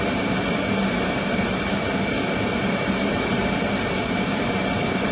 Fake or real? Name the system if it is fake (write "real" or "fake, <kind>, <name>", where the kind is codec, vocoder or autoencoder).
fake, vocoder, BigVGAN v2